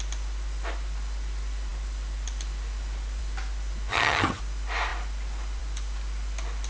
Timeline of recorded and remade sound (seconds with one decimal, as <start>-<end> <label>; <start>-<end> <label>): 0.0-3.9 recorded; 3.9-4.4 remade; 4.4-6.7 recorded